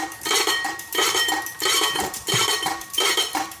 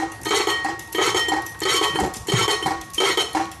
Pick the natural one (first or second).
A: second